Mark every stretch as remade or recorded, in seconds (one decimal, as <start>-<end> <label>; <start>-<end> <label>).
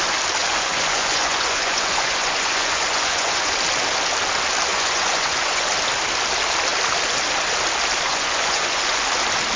0.0-0.4 recorded; 0.4-3.5 remade; 3.5-4.7 recorded; 4.7-5.7 remade; 5.7-8.1 recorded; 8.1-9.1 remade; 9.1-9.6 recorded